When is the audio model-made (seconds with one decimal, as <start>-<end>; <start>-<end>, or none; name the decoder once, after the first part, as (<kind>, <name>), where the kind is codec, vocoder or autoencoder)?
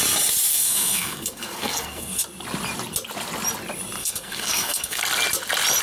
0.5-2.2 (codec, SNAC); 4.0-5.0